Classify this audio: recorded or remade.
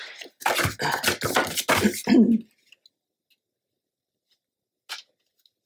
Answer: recorded